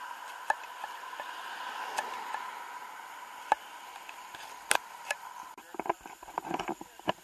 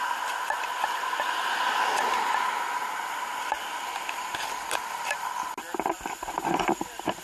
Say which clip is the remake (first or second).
first